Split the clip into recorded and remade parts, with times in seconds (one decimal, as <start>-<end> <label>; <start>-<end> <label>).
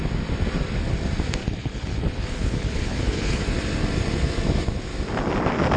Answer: 0.0-1.4 recorded; 1.4-3.4 remade; 3.4-5.8 recorded